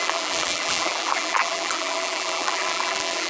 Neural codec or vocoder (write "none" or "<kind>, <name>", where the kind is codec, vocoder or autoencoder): vocoder, BigVGAN v2